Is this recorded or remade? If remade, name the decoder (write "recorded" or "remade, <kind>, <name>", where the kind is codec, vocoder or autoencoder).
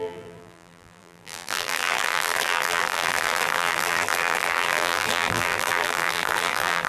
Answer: remade, vocoder, BigVGAN v2